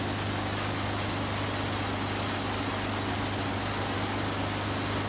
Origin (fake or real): real